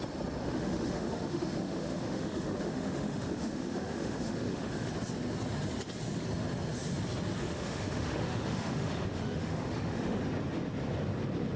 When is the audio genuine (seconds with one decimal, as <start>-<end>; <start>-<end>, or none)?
0.0-0.4; 4.9-7.4; 10.2-11.6